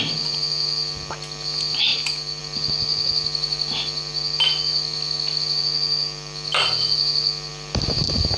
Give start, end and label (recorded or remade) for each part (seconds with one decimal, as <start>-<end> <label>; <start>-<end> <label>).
0.0-8.4 recorded